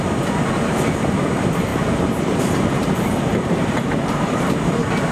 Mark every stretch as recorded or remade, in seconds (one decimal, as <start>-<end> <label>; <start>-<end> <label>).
0.0-1.7 recorded; 1.7-4.5 remade; 4.5-5.1 recorded